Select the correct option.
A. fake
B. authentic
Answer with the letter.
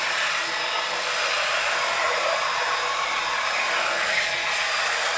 B